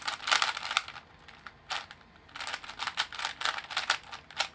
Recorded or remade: recorded